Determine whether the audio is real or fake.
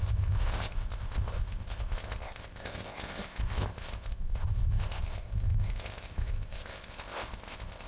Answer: fake